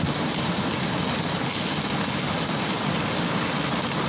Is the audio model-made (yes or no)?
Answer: no